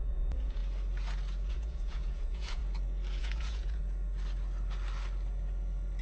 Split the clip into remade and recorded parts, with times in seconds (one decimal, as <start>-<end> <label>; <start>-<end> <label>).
0.0-0.6 remade; 0.6-1.5 recorded; 1.5-2.6 remade; 2.6-3.2 recorded; 3.2-3.8 remade; 3.8-6.0 recorded

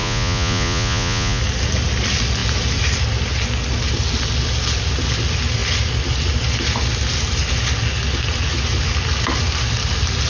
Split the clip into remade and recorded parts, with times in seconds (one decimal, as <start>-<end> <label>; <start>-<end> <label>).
0.0-1.4 remade; 1.4-10.3 recorded

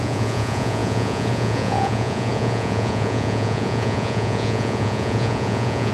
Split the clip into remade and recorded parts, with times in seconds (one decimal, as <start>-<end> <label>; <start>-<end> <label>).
0.0-5.9 remade

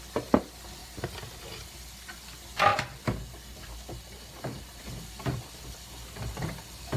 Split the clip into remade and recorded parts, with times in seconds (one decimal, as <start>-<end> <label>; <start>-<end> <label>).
0.0-7.0 recorded

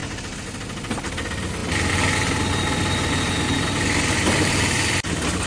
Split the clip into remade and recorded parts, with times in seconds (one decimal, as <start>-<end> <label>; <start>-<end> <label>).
0.0-5.5 recorded

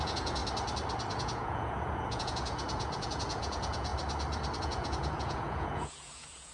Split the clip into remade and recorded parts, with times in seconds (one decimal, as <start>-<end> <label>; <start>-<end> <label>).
0.0-0.4 remade; 0.4-1.1 recorded; 1.1-3.9 remade; 3.9-4.6 recorded; 4.6-6.5 remade

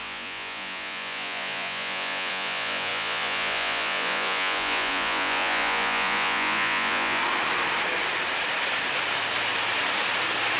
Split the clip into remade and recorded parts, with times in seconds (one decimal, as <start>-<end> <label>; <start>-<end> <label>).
0.0-7.2 remade; 7.2-10.6 recorded